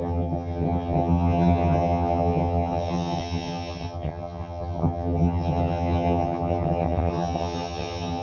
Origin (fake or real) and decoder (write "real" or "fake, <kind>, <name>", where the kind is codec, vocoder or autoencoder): fake, vocoder, HiFi-GAN